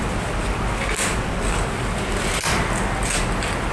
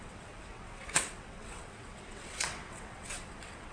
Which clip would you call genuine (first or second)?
first